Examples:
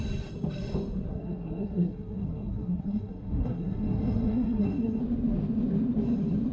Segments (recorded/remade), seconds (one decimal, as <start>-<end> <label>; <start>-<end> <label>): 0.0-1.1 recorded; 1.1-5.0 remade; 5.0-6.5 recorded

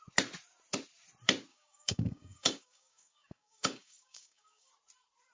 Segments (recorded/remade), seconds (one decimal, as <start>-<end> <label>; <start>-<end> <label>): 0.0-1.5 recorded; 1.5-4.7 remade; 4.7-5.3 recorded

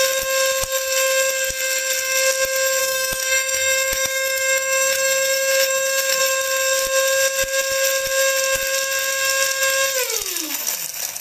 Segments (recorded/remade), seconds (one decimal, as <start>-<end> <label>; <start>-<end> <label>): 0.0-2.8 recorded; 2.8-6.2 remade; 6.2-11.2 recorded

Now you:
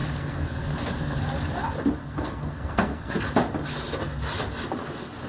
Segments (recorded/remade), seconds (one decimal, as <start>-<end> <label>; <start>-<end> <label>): 0.0-1.2 remade; 1.2-2.0 recorded; 2.0-3.2 remade; 3.2-5.3 recorded